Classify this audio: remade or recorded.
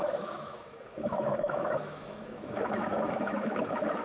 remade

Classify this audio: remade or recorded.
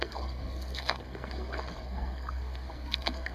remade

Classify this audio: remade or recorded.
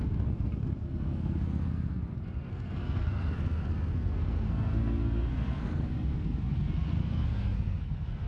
remade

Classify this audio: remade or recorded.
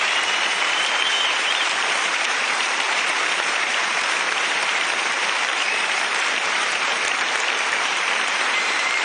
remade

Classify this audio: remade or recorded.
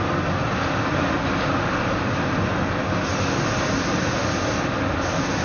recorded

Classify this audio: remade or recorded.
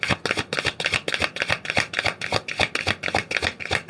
recorded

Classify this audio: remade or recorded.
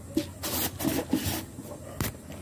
recorded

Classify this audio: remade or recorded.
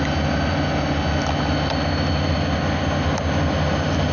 recorded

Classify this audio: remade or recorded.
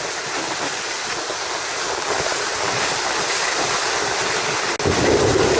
recorded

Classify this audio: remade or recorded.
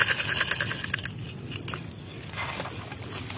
recorded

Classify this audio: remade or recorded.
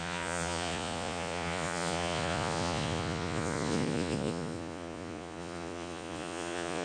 remade